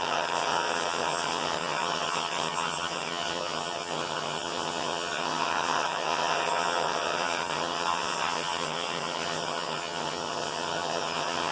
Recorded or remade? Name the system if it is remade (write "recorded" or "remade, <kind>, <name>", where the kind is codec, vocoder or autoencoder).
remade, vocoder, HiFi-GAN